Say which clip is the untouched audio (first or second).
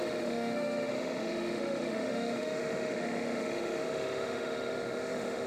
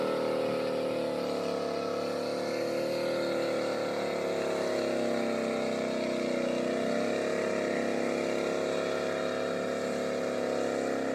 second